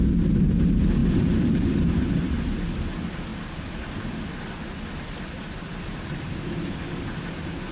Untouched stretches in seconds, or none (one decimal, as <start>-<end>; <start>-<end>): 0.0-7.7